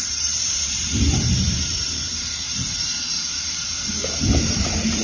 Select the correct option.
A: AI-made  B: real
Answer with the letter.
A